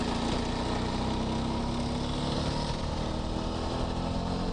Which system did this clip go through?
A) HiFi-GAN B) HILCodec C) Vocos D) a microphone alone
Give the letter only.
D